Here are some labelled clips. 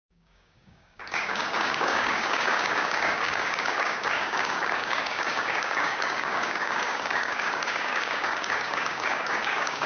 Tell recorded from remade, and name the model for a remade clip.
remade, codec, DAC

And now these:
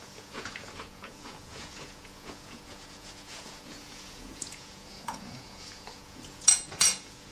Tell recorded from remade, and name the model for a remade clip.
remade, vocoder, Vocos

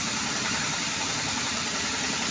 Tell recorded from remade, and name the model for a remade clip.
remade, vocoder, BigVGAN v2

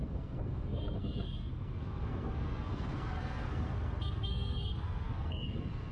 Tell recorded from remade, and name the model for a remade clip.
remade, codec, SNAC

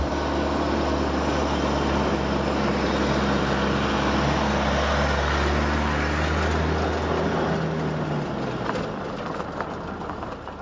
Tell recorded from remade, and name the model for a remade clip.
recorded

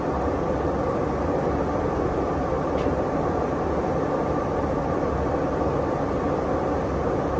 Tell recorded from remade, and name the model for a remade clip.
recorded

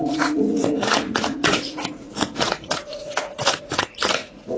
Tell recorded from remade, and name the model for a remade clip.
remade, vocoder, Vocos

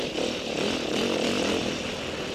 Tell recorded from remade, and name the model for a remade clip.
recorded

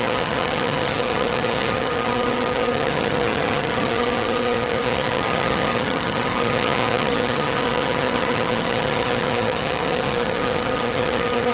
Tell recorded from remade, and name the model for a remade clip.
remade, vocoder, HiFi-GAN